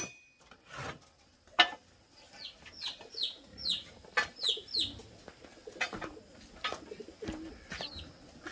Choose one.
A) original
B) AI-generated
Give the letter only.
A